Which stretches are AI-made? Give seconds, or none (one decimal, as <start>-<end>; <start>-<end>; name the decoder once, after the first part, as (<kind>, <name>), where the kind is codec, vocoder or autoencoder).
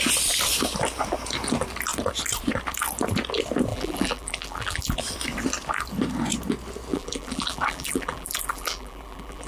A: 3.7-5.0 (vocoder, BigVGAN v2); 6.9-9.5